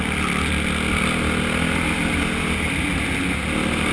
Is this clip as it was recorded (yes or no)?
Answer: yes